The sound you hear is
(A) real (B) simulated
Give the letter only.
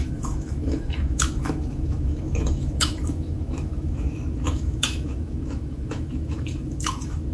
B